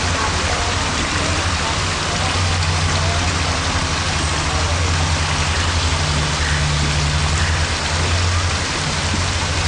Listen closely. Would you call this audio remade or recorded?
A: recorded